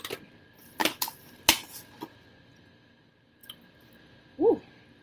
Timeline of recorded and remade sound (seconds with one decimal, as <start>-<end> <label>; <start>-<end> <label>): 0.0-0.8 recorded; 0.8-1.8 remade; 1.8-5.0 recorded